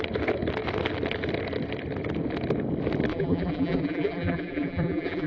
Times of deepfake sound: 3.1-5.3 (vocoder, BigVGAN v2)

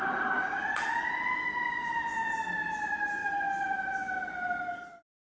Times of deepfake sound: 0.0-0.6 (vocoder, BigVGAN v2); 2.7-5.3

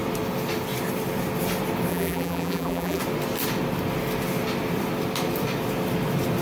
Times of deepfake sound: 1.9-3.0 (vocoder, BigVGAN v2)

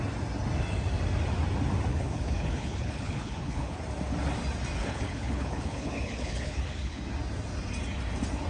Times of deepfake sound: 1.9-3.8 (codec, HILCodec); 4.8-7.0

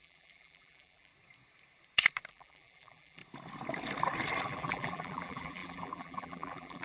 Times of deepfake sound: 0.0-1.1 (vocoder, BigVGAN v2); 2.3-3.2; 4.4-6.8